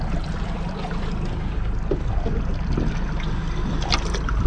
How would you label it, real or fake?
real